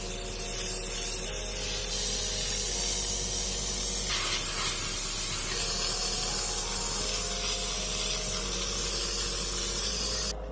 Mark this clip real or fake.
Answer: real